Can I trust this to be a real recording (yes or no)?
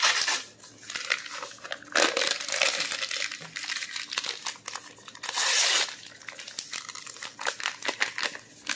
yes